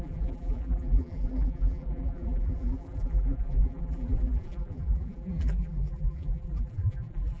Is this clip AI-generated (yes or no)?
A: yes